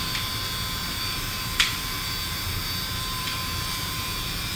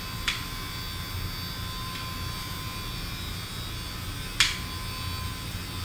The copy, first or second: first